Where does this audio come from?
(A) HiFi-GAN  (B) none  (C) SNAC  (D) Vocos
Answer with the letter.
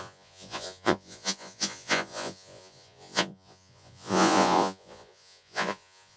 D